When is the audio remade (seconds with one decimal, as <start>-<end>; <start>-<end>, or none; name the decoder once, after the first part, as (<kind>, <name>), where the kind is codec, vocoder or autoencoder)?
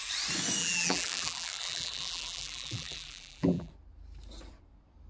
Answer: 0.6-3.7 (vocoder, BigVGAN v2)